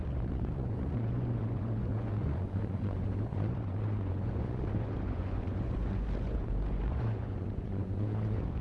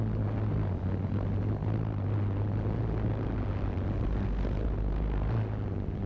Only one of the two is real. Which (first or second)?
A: second